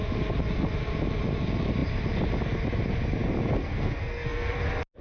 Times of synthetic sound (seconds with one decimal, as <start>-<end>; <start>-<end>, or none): 3.6-4.6